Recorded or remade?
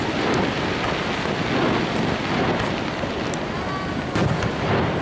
recorded